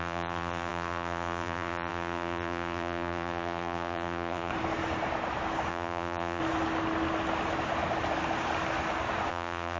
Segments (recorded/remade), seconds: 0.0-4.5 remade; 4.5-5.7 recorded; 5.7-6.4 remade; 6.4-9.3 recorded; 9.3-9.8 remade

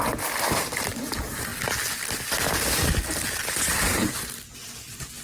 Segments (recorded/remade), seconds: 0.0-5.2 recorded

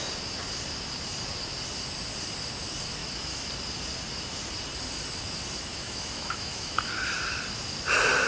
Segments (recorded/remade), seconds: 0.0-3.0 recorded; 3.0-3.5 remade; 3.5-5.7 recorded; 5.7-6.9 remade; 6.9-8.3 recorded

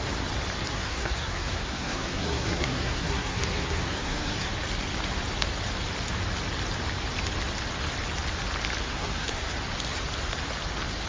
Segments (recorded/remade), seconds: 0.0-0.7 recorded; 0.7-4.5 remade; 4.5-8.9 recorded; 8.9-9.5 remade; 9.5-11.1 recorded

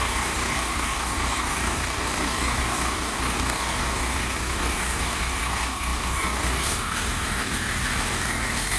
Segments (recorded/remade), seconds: 0.0-8.8 remade

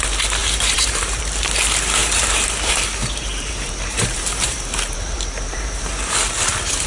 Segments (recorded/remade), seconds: 0.0-0.4 recorded; 0.4-1.2 remade; 1.2-2.0 recorded; 2.0-6.1 remade; 6.1-6.9 recorded